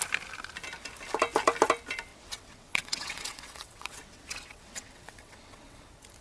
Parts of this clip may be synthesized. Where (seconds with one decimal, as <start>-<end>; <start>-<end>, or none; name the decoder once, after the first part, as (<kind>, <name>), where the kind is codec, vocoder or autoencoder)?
2.1-5.8 (vocoder, WaveNeXt)